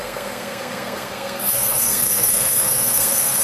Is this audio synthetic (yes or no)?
yes